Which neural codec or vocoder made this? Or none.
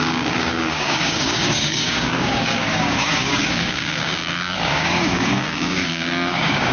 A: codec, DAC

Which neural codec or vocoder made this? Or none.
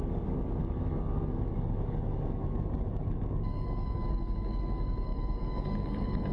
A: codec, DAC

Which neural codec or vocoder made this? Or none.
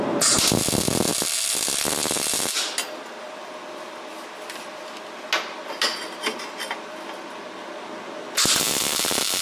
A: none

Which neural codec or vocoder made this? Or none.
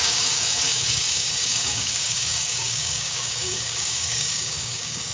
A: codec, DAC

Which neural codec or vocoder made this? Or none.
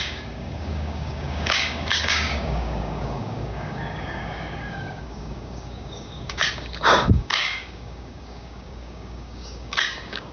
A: codec, DAC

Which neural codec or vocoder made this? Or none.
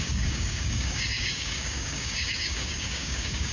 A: codec, DAC